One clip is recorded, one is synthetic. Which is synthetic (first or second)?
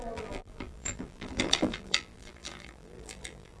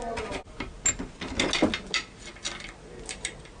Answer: first